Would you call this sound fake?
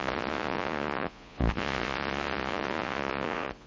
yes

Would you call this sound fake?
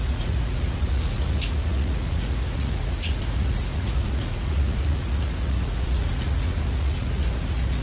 yes